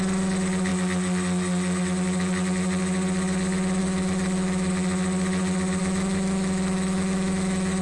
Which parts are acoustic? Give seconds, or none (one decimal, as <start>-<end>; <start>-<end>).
0.0-3.8; 4.7-5.8